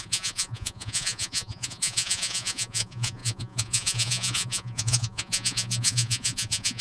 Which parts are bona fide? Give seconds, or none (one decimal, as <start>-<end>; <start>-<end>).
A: none